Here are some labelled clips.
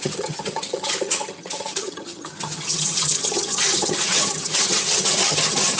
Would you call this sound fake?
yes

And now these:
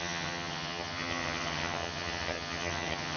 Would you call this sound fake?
yes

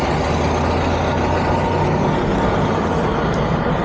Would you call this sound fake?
no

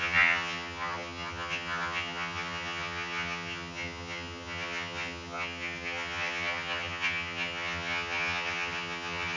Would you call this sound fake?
yes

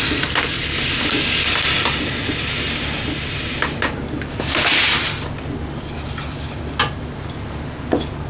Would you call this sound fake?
no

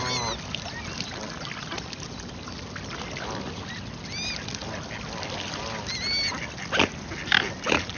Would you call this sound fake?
no